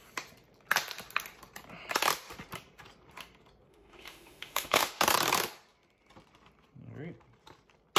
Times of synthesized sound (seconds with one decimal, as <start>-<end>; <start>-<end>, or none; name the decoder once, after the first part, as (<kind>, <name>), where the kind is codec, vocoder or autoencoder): 3.7-5.0 (autoencoder, DAC-VAE)